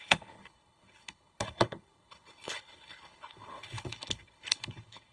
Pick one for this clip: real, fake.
fake